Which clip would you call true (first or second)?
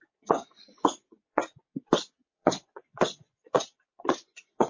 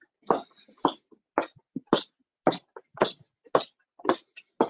second